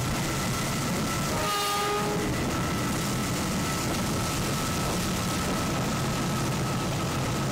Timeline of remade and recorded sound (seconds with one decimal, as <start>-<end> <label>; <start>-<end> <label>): 0.0-7.5 recorded